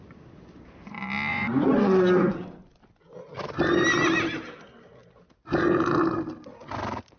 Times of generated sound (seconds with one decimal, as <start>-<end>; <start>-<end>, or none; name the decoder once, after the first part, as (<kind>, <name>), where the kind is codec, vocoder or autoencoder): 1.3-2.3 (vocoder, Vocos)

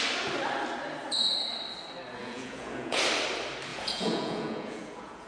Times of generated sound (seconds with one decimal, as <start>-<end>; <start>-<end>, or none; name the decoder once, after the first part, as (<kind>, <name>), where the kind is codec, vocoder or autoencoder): 2.2-3.0 (vocoder, Vocos); 3.7-5.3

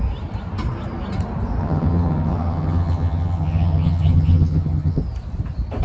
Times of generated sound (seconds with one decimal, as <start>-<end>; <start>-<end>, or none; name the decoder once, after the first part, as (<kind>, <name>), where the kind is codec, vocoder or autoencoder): 1.6-5.0 (vocoder, HiFi-GAN)